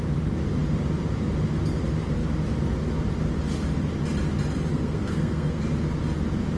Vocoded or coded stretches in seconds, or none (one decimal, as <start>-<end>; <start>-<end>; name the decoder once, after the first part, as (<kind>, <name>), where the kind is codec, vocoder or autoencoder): 4.7-5.6 (codec, SNAC)